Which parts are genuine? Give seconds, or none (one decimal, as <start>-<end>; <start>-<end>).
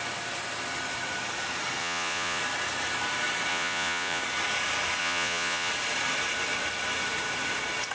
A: 0.0-1.8; 2.4-3.5; 4.2-5.0; 5.7-7.9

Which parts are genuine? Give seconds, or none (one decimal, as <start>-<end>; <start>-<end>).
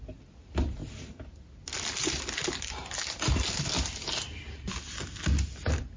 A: 0.0-6.0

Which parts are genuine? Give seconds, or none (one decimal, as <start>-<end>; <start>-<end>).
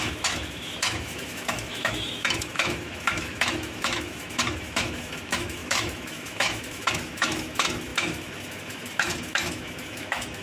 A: none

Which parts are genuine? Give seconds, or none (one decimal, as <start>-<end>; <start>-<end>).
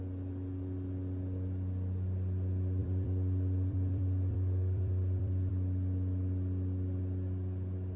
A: 0.0-2.8; 5.5-8.0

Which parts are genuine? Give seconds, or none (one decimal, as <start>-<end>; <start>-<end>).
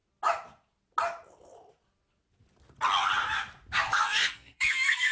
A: 0.0-3.9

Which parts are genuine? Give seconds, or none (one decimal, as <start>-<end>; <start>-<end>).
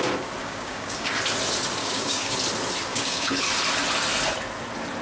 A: 0.0-0.4; 1.1-1.8; 2.3-2.9; 3.4-5.0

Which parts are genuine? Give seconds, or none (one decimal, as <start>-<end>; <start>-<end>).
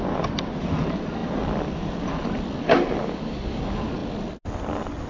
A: 0.0-3.0; 3.6-5.1